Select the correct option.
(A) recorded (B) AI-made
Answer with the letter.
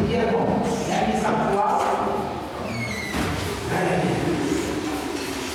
A